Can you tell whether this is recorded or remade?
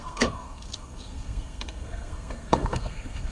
remade